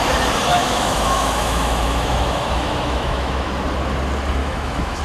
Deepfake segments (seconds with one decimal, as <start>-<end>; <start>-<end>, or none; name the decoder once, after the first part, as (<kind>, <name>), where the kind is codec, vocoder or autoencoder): 0.5-3.5 (autoencoder, DAC-VAE); 4.4-5.0